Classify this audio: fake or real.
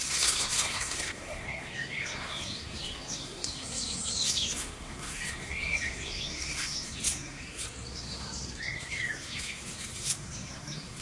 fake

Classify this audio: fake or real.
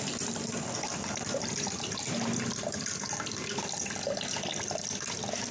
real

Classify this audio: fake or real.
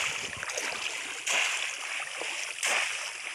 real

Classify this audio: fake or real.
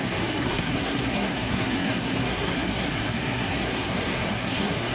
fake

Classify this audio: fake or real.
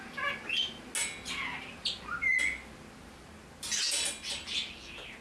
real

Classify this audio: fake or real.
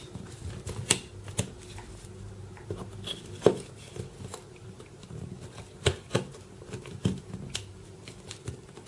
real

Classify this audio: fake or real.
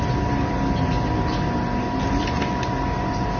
real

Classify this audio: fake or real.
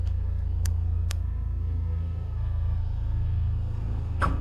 fake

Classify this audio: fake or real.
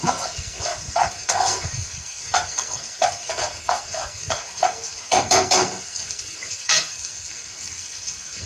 fake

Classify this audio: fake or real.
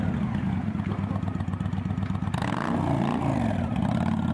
real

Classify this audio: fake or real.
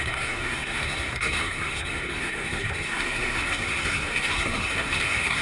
fake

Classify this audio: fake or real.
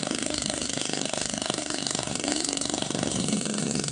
fake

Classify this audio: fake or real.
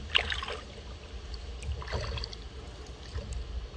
real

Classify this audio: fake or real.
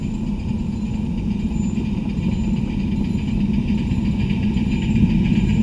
real